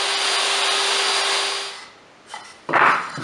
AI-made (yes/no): no